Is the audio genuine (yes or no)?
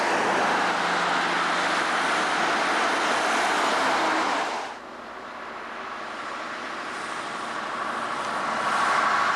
yes